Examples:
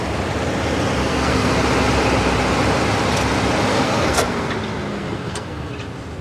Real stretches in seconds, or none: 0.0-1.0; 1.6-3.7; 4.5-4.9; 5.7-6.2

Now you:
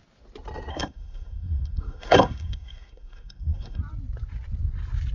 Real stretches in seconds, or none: 0.0-0.7; 3.8-5.1

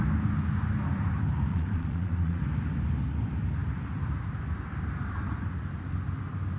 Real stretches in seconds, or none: 0.0-1.5; 2.4-6.6